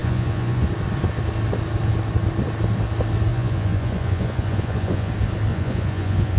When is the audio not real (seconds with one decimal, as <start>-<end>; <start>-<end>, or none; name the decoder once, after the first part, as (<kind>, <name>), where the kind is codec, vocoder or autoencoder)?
0.0-0.7 (vocoder, Vocos); 3.3-5.1; 5.5-6.4